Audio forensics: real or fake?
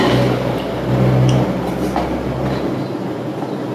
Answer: real